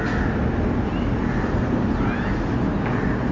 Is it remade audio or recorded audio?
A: recorded